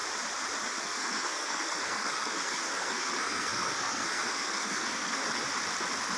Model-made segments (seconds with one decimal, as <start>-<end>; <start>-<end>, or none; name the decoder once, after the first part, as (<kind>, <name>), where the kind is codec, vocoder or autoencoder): 0.8-5.2 (codec, SNAC)

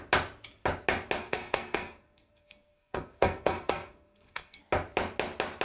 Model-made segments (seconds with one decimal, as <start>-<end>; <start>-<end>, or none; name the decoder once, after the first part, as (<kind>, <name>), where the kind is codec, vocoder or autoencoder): 1.2-4.6 (codec, SNAC)

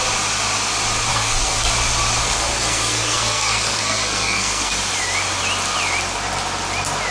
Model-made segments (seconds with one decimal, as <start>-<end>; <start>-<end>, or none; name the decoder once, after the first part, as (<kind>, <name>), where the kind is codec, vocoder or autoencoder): 1.1-1.7 (codec, SNAC); 2.2-4.7

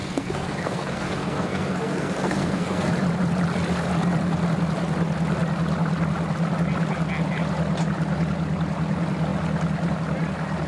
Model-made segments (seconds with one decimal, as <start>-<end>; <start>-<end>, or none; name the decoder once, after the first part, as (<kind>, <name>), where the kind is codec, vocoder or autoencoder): 0.0-2.9 (codec, SNAC)

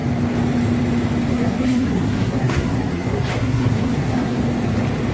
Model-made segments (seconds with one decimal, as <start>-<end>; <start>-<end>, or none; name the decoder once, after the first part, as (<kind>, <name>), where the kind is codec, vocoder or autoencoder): 1.3-4.4 (codec, SNAC)

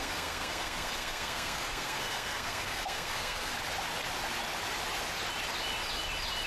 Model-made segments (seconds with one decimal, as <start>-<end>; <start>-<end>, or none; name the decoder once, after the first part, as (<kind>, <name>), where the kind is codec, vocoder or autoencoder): 0.0-3.5 (codec, SNAC)